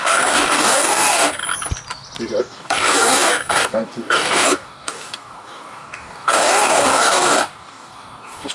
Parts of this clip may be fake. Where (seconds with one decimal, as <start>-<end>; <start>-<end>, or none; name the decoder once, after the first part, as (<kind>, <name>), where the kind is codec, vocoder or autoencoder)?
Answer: 0.0-1.4 (codec, DAC); 2.4-8.5